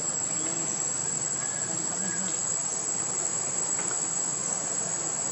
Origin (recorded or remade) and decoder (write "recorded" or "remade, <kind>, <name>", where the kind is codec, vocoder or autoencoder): recorded